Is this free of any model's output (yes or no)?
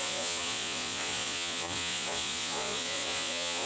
no